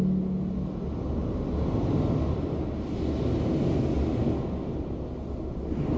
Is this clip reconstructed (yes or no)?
no